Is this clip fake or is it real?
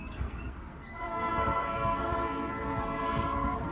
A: fake